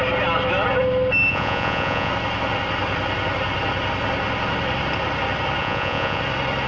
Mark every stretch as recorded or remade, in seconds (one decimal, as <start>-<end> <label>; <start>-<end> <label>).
0.0-1.3 recorded; 1.3-2.1 remade; 2.1-5.6 recorded; 5.6-6.2 remade; 6.2-6.7 recorded